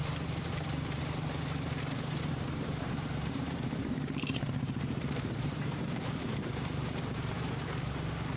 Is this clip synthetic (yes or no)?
yes